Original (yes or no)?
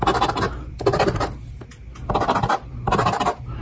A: yes